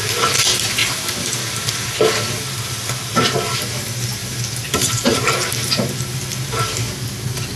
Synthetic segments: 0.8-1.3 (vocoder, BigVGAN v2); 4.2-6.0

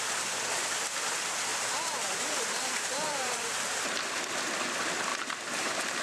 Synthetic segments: 1.5-4.5 (vocoder, BigVGAN v2); 5.1-6.0

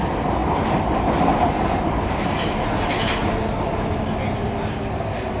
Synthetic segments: none

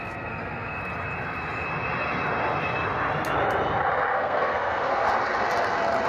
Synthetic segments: 0.0-0.8 (codec, SNAC); 4.1-5.0

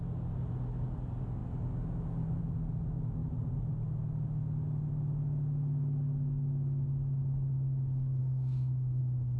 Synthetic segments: 8.2-9.0 (codec, SNAC)

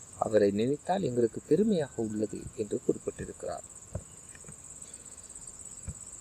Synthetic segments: 0.0-6.2 (vocoder, Vocos)

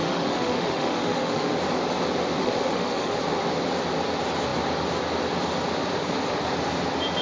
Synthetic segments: 0.0-1.5 (autoencoder, DAC-VAE); 2.4-3.2